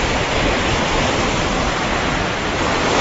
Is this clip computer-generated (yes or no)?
no